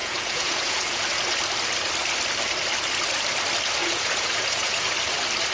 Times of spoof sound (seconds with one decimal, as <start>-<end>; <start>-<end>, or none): 0.0-1.0; 3.8-4.9